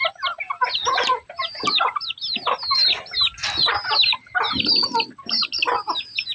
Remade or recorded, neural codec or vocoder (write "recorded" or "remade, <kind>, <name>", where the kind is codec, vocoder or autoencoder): recorded